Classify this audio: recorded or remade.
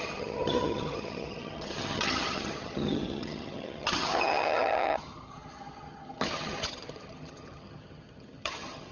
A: remade